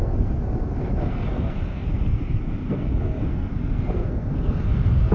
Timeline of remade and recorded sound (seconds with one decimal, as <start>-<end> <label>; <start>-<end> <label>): 0.0-5.1 remade